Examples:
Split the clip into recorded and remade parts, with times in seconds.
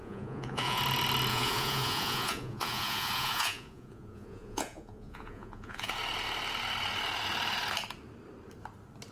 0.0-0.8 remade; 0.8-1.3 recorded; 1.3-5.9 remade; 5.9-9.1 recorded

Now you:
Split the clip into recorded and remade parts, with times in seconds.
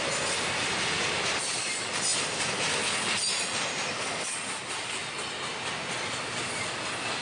0.0-7.2 recorded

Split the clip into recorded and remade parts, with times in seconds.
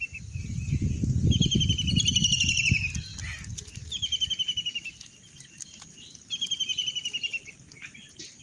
0.0-8.4 recorded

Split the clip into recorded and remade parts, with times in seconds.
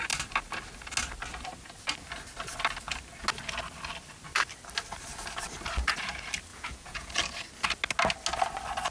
0.0-6.5 recorded; 6.5-7.1 remade; 7.1-8.9 recorded